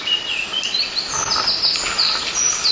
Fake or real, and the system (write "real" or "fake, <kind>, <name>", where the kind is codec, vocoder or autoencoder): real